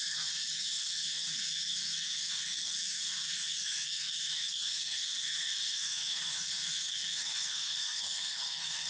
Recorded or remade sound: remade